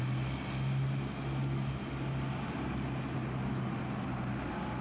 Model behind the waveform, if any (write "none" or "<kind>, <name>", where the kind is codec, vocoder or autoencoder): none